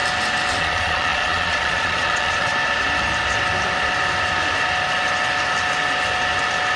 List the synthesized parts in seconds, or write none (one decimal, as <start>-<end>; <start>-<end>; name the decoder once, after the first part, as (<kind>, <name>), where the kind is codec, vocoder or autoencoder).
0.5-2.5 (vocoder, Vocos)

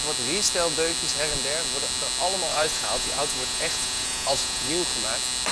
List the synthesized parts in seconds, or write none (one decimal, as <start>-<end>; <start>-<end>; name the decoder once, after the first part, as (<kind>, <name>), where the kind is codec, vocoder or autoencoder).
2.5-4.7 (vocoder, Vocos)

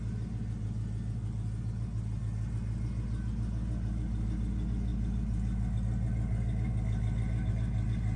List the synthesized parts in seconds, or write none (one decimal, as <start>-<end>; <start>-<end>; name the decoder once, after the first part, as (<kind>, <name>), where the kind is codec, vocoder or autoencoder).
none

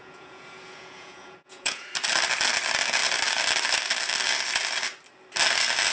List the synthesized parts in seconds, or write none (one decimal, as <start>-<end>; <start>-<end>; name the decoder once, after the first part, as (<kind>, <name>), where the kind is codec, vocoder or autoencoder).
0.0-1.9 (vocoder, Vocos)

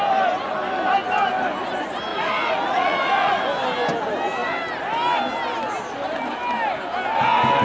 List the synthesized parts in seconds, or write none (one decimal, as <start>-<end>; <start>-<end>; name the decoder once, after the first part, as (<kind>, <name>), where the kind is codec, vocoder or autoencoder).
2.1-3.4 (vocoder, Vocos)

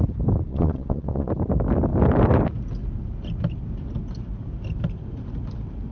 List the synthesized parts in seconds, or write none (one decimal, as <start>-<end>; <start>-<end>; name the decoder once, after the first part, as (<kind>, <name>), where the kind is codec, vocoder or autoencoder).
0.5-1.3 (vocoder, Vocos)

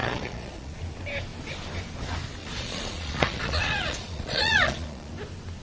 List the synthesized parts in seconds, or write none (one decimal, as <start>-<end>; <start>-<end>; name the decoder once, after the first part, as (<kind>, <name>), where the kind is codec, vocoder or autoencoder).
0.0-0.8 (vocoder, Vocos); 2.4-5.1

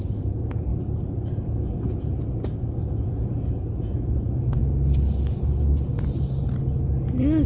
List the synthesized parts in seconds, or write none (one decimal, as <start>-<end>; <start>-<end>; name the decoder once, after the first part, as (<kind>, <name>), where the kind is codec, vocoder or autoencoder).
0.0-0.7 (vocoder, Vocos); 1.6-4.6